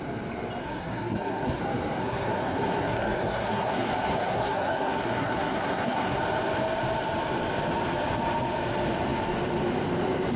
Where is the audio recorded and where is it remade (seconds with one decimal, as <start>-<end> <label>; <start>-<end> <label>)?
0.0-0.6 recorded; 0.6-1.6 remade; 1.6-2.0 recorded; 2.0-6.2 remade; 6.2-10.4 recorded